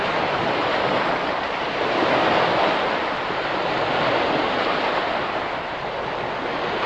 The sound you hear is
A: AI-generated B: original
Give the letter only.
B